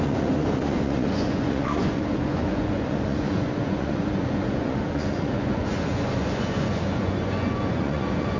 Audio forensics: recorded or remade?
remade